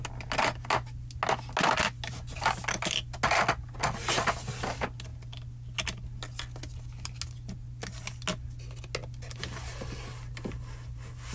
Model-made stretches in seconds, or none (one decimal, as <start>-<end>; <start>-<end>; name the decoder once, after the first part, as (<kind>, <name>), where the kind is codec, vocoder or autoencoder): none